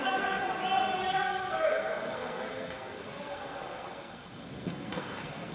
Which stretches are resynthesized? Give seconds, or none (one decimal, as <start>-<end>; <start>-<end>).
0.0-0.4; 1.1-5.5